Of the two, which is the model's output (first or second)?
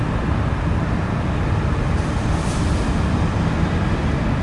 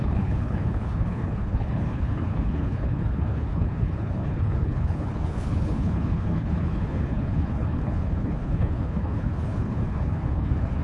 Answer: second